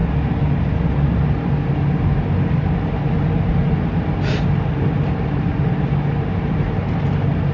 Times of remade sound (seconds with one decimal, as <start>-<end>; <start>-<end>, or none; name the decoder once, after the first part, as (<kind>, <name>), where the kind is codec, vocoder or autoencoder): none